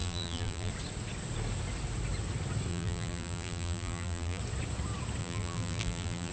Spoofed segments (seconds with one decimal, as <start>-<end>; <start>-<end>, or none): 0.0-0.7; 2.7-4.4; 5.2-6.3